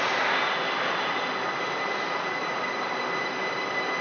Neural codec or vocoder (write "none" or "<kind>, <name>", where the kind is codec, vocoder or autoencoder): none